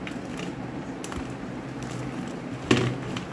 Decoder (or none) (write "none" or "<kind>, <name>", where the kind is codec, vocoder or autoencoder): none